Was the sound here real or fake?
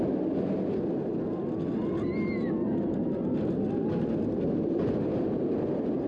real